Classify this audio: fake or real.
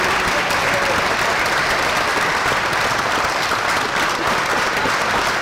fake